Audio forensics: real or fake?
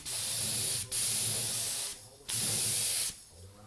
real